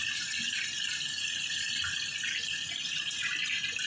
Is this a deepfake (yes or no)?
no